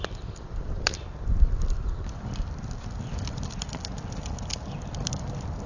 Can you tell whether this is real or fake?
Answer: real